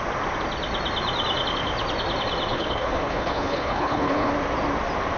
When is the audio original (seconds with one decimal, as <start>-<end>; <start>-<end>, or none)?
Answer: 0.0-2.5; 4.3-5.2